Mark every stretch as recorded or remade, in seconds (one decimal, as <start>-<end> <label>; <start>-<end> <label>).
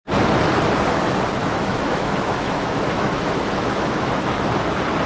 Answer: 0.0-1.4 recorded; 1.4-4.5 remade; 4.5-5.1 recorded